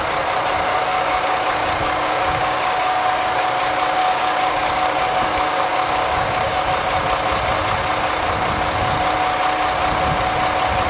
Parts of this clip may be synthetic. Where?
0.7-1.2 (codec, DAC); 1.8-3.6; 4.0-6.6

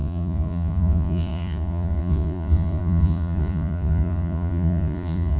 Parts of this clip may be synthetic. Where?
0.0-5.4 (vocoder, Vocos)

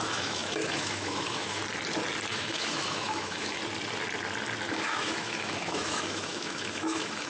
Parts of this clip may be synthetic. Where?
0.0-1.6 (autoencoder, DAC-VAE); 2.3-3.6; 4.7-7.3

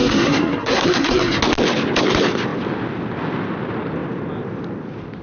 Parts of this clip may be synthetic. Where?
0.0-1.4 (codec, SNAC)

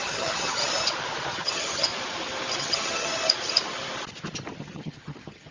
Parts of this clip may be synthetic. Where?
0.0-0.6 (vocoder, HiFi-GAN); 1.3-1.9; 2.6-3.1; 4.6-5.5

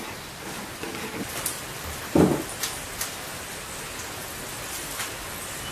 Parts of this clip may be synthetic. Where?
none

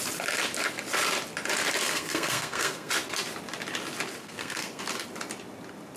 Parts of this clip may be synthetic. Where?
1.8-2.9 (codec, SNAC); 4.2-4.8

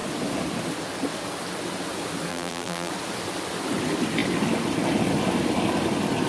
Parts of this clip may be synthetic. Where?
2.3-2.9 (vocoder, BigVGAN v2)